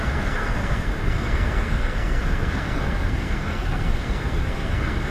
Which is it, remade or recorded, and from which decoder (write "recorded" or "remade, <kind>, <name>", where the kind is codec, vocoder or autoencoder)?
remade, codec, SNAC